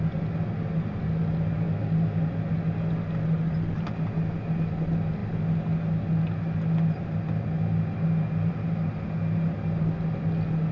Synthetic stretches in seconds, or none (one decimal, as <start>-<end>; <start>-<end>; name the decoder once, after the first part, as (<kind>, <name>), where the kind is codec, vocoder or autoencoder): none